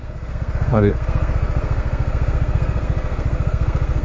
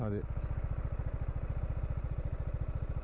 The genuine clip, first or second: second